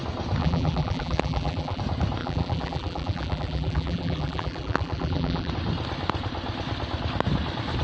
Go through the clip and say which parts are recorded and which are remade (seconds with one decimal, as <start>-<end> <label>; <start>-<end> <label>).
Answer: 0.0-0.4 recorded; 0.4-1.8 remade; 1.8-2.2 recorded; 2.2-5.5 remade; 5.5-7.8 recorded